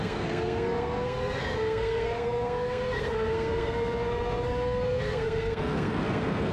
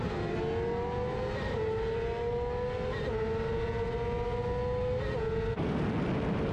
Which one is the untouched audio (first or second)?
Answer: second